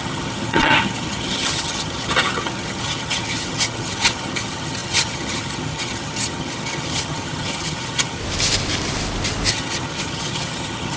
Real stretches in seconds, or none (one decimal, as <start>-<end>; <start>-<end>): 8.2-9.5